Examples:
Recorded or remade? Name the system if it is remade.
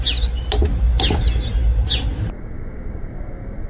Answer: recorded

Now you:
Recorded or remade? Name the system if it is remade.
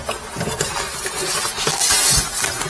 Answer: recorded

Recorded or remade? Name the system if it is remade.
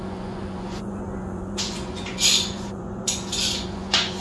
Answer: remade, vocoder, Vocos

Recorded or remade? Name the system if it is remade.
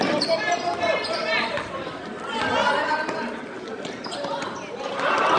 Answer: recorded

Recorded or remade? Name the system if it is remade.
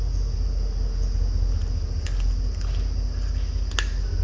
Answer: recorded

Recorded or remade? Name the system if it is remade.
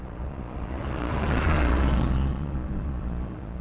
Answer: remade, vocoder, Vocos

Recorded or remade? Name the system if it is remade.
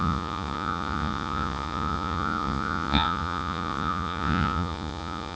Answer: remade, vocoder, Vocos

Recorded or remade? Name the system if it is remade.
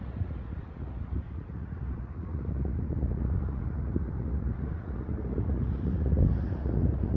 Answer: remade, vocoder, Vocos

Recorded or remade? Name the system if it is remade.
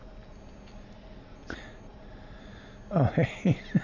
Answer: recorded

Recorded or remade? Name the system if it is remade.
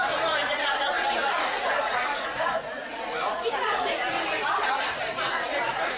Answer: remade, vocoder, Vocos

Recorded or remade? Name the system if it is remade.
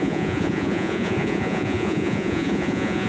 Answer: remade, vocoder, Vocos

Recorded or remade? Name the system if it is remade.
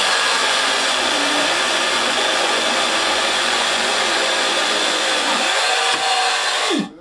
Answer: remade, vocoder, Vocos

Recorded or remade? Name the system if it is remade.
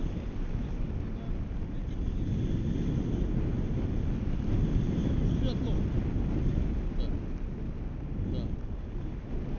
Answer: recorded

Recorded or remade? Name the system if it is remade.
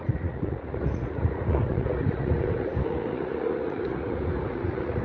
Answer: remade, vocoder, Vocos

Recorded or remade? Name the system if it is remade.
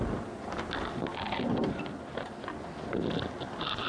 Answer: recorded